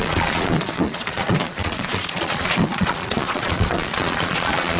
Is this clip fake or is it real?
fake